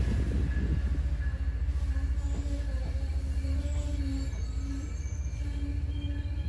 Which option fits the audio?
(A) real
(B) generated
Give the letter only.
A